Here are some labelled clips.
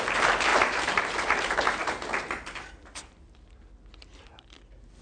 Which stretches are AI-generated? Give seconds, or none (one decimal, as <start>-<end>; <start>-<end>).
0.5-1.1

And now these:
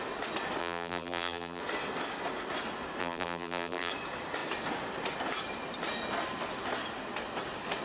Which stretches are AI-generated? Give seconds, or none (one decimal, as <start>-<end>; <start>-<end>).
0.6-1.6; 3.0-3.9

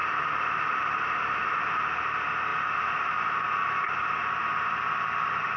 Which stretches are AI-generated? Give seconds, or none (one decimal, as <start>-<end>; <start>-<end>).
0.0-1.3

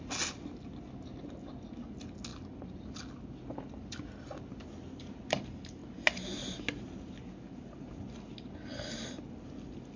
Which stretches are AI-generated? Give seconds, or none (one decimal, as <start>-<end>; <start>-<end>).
none

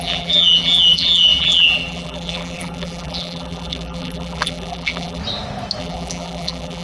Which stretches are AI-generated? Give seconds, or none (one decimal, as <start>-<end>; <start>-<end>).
0.0-5.2; 5.8-6.8

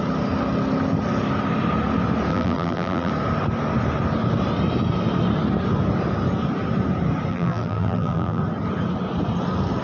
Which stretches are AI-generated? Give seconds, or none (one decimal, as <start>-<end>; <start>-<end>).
2.3-3.1; 7.3-8.4

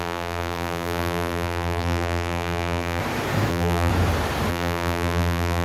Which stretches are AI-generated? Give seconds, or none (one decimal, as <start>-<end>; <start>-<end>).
0.0-3.0; 3.5-3.9; 4.5-5.6